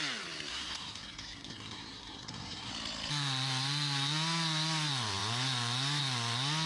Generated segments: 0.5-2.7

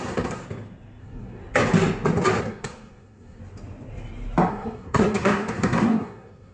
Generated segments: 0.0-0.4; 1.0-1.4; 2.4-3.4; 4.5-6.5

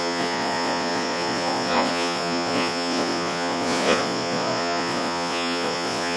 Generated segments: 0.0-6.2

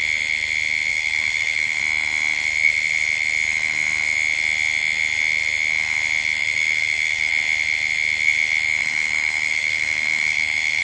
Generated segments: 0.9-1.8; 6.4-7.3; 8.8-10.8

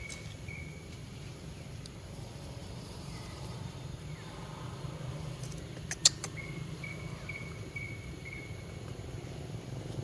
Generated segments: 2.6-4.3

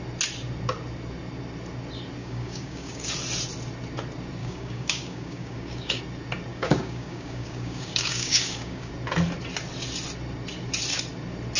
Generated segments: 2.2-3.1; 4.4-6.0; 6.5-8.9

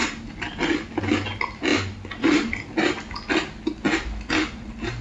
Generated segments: none